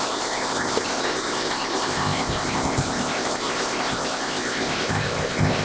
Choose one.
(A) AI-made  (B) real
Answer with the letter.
A